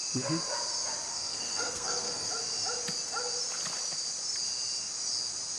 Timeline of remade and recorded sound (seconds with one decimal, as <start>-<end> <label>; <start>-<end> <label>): 0.0-1.1 recorded; 1.1-2.3 remade; 2.3-5.6 recorded